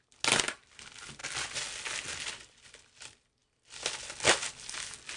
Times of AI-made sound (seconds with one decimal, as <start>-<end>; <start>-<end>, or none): none